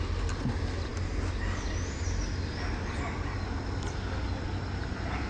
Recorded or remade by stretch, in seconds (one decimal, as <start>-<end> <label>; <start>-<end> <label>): 0.0-5.3 recorded